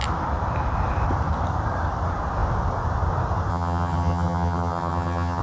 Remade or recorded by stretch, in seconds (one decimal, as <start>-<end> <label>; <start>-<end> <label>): 0.0-3.5 recorded; 3.5-5.4 remade